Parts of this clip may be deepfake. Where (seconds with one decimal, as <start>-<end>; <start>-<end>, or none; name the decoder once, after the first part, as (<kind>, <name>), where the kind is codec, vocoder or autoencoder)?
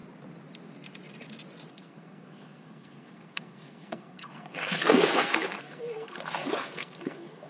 1.7-7.5 (codec, SNAC)